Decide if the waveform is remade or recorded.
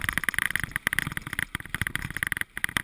recorded